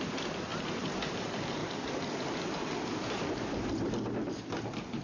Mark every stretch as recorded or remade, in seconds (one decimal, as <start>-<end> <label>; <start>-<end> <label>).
0.0-5.0 recorded